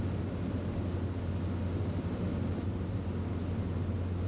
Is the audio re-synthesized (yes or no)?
no